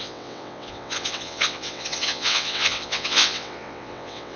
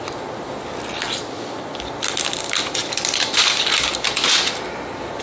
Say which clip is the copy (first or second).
first